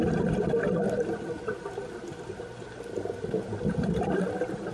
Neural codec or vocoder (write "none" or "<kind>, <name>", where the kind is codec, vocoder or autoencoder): none